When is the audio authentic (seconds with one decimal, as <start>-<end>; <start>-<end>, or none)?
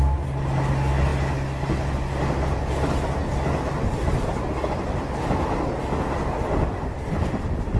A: 0.0-7.8